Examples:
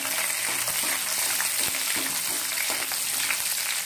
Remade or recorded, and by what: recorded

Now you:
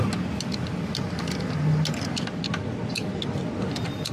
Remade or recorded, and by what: recorded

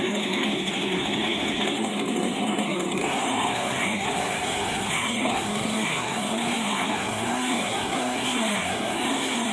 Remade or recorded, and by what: remade, codec, SNAC